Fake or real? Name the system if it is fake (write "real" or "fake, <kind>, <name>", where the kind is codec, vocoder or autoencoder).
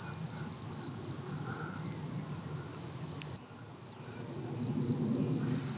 real